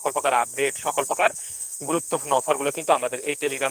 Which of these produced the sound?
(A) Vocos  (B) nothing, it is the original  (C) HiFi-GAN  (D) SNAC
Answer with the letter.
D